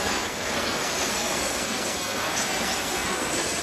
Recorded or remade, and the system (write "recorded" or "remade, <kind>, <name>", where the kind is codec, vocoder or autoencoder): remade, codec, SNAC